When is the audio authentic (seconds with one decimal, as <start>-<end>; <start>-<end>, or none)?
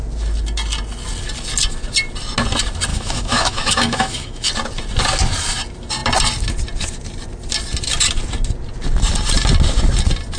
0.0-2.9; 4.5-10.4